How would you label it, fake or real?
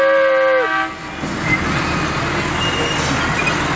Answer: real